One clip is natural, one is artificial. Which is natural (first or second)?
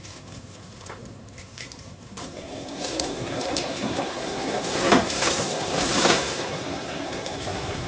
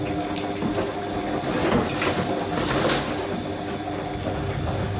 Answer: second